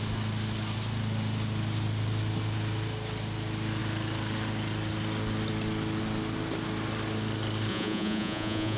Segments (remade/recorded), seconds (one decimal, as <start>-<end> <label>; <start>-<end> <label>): 0.0-7.7 recorded; 7.7-8.8 remade